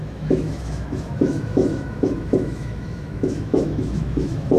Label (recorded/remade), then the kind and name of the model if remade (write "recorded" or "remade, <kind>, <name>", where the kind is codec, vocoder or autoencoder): remade, autoencoder, DAC-VAE